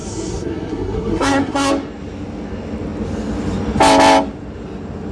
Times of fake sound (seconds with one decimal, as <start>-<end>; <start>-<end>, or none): 0.0-1.7